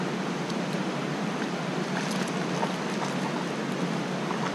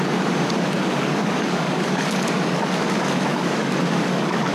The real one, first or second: first